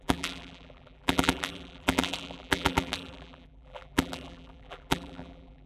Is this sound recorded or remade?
remade